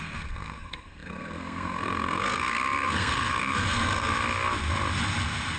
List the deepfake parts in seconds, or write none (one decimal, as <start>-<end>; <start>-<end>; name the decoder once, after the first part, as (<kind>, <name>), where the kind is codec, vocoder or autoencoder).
0.0-4.1 (codec, SNAC)